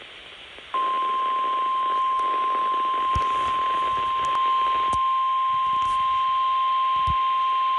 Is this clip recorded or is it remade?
recorded